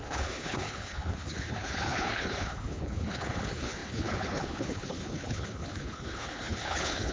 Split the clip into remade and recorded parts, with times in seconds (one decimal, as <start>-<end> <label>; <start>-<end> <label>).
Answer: 0.0-7.1 remade